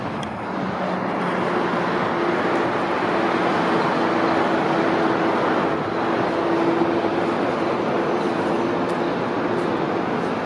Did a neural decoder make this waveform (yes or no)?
no